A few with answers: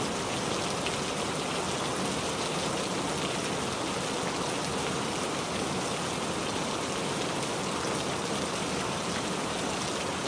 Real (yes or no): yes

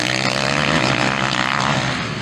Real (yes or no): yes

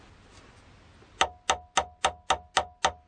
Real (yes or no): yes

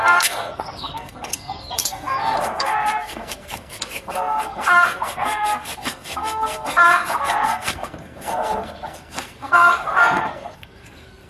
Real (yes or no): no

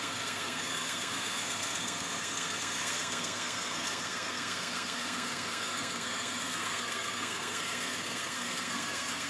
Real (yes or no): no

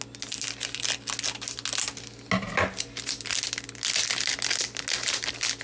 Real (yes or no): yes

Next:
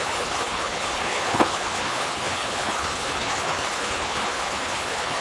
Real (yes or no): no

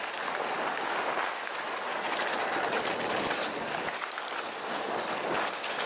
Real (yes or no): yes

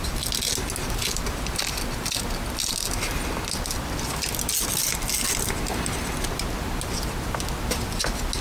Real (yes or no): yes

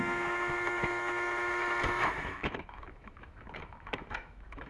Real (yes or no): no